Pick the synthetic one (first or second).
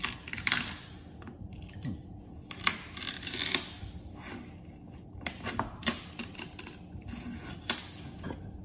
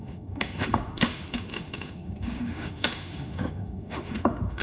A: second